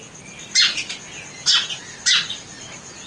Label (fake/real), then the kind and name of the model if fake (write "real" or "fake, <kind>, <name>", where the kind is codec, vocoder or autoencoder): real